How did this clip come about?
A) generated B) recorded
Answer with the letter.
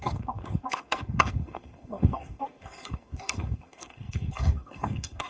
A